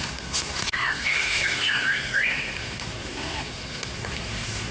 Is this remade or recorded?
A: remade